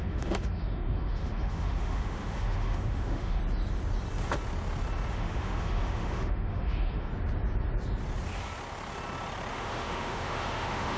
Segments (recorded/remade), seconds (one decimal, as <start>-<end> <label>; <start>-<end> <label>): 0.0-3.4 remade; 3.4-5.1 recorded; 5.1-7.1 remade; 7.1-9.5 recorded; 9.5-11.0 remade